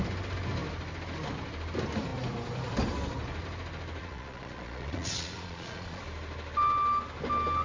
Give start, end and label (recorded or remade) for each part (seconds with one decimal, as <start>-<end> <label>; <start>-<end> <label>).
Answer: 0.0-4.0 recorded; 4.0-6.0 remade; 6.0-7.6 recorded